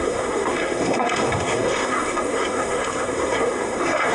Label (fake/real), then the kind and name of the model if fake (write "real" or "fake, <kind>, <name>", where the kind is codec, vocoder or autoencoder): fake, codec, SNAC